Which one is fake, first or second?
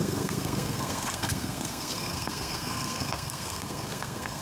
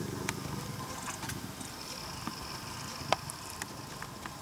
first